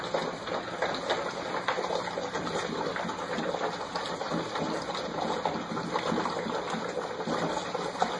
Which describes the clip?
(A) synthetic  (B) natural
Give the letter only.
B